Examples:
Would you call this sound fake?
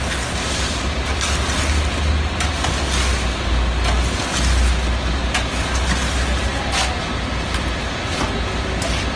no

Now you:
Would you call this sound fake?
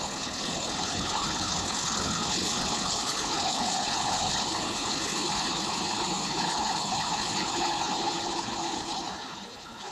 yes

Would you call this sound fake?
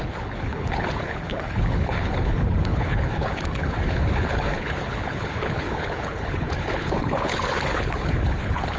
yes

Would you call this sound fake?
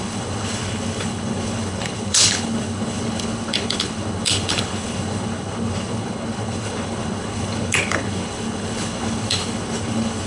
yes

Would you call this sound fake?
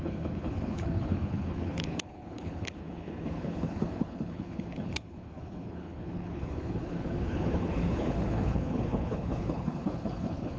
yes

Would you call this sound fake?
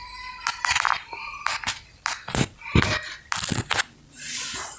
no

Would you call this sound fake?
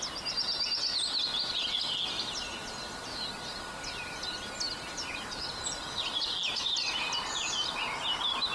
no